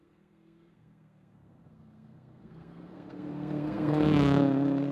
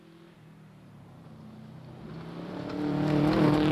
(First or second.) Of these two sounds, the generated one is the first